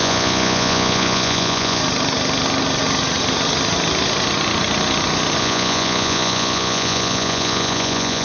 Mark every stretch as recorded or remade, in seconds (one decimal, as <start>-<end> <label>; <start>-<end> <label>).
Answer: 0.0-1.8 remade; 1.8-5.4 recorded; 5.4-8.2 remade